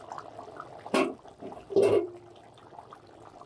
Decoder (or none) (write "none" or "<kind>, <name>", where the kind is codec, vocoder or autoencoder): none